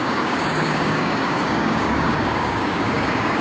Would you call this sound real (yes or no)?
no